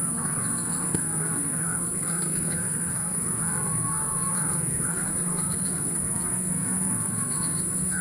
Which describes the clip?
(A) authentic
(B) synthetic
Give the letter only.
B